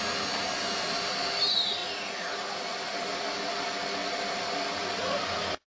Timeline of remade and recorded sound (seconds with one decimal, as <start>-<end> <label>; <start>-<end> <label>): 0.0-5.7 recorded